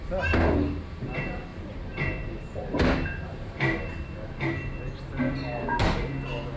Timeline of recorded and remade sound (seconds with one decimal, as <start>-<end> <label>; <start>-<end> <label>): 0.0-1.5 recorded; 1.5-4.8 remade; 4.8-6.6 recorded